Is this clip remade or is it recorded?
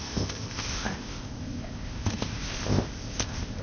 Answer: remade